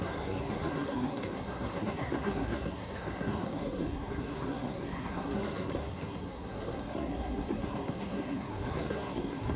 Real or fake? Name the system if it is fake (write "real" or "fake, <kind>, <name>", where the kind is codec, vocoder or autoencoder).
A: fake, codec, SNAC